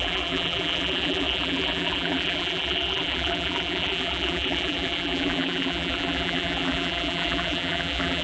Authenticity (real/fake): fake